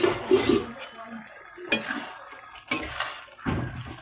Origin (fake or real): real